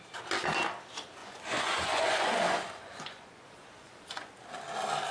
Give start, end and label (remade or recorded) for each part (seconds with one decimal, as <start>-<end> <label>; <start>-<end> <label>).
0.0-1.2 recorded; 1.2-4.3 remade; 4.3-5.1 recorded

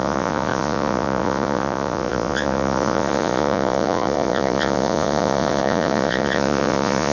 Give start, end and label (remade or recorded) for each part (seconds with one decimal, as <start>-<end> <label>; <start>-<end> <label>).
0.0-7.1 remade